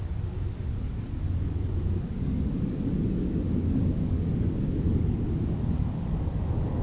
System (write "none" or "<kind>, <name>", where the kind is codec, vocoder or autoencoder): codec, DAC